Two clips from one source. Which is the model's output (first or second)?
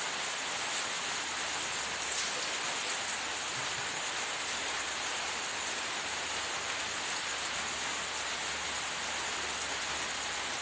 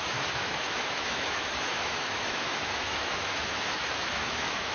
second